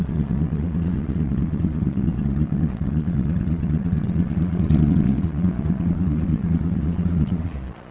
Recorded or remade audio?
remade